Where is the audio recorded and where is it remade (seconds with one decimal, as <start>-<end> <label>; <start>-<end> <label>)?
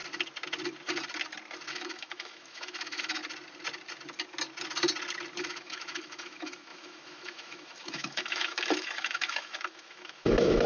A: 0.0-1.7 recorded; 1.7-3.2 remade; 3.2-5.4 recorded; 5.4-10.7 remade